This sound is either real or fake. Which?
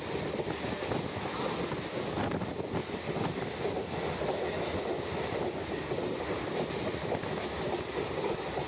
real